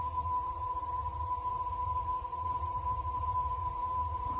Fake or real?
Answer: fake